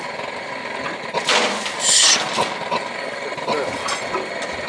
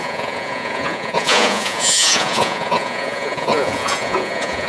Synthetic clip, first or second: second